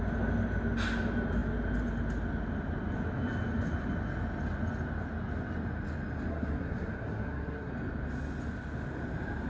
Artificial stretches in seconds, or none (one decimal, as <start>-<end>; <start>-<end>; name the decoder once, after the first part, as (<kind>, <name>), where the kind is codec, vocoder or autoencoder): 6.3-7.7 (codec, SNAC)